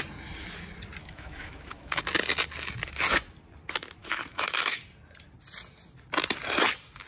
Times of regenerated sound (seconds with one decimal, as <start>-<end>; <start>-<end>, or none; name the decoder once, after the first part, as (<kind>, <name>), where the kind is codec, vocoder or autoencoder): 1.0-2.0 (autoencoder, DAC-VAE); 4.0-4.8